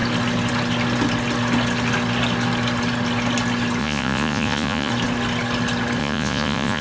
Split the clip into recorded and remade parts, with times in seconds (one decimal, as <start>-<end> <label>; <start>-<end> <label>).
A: 0.0-3.8 recorded; 3.8-4.9 remade; 4.9-6.0 recorded; 6.0-6.8 remade